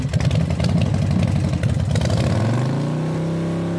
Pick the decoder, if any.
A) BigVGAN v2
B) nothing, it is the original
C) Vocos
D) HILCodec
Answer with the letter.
B